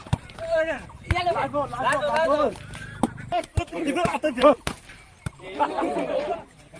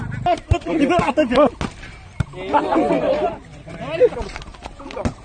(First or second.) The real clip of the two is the second